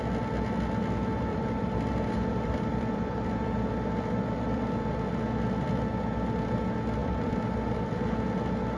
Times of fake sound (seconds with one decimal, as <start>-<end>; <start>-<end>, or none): 1.3-5.1; 7.0-7.9